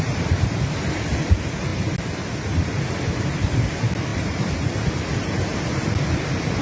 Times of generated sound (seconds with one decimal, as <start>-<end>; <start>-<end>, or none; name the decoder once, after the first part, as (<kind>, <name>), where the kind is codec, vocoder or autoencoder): none

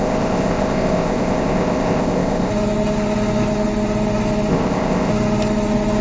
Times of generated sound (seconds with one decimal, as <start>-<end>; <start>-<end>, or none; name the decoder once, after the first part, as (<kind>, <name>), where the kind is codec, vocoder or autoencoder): 0.0-2.5 (codec, ZipCodec); 4.5-5.1

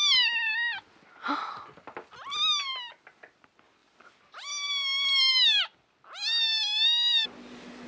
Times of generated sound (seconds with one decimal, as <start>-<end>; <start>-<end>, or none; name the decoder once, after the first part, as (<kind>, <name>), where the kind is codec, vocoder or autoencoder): none